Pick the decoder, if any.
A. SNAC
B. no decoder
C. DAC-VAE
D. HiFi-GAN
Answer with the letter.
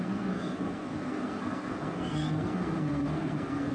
A